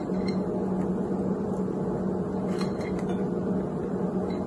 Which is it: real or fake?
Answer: real